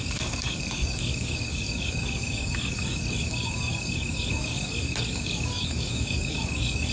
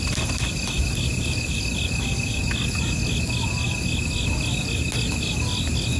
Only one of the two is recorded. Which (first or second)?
second